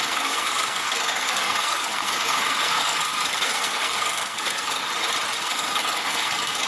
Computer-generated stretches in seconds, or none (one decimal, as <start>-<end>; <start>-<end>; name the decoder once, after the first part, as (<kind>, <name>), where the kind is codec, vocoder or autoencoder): 0.0-4.8 (codec, SNAC); 5.4-6.7